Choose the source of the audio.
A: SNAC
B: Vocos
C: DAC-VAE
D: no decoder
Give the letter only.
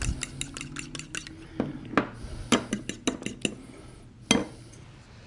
D